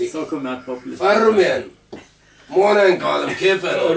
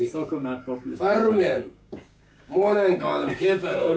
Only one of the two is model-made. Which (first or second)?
second